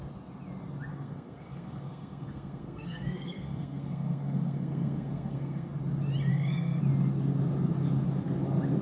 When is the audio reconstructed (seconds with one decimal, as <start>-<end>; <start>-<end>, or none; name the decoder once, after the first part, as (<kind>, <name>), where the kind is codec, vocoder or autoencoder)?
0.9-5.8 (codec, SNAC); 6.3-6.8